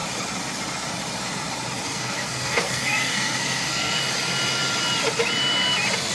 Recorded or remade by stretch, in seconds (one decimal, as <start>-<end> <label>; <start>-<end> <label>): 0.0-1.9 recorded; 1.9-4.0 remade; 4.0-6.1 recorded